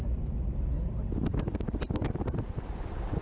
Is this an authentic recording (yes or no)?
yes